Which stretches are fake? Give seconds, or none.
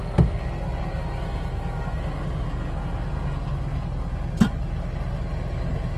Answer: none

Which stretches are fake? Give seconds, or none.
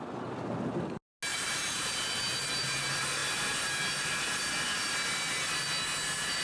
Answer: 1.3-1.9 (vocoder, BigVGAN v2)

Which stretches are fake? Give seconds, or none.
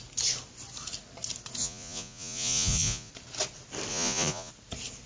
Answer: 1.6-3.1 (vocoder, Vocos); 3.9-4.5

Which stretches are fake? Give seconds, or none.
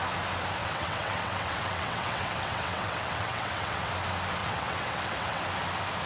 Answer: 0.6-3.9 (vocoder, WaveNeXt); 4.4-5.4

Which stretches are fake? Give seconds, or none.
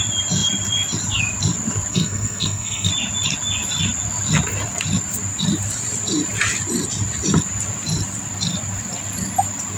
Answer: 1.9-2.9 (codec, SNAC)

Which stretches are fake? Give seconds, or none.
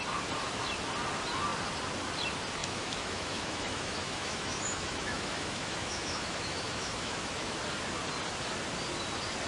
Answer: 2.6-7.6 (autoencoder, DAC-VAE)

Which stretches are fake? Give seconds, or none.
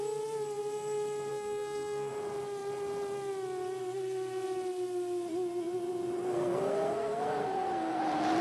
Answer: 1.3-2.1 (codec, SNAC); 6.3-8.0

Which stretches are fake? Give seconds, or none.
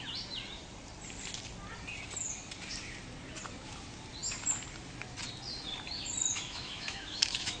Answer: 6.3-7.6 (autoencoder, DAC-VAE)